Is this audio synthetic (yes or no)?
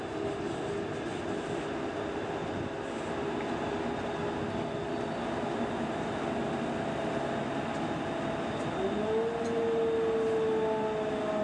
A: no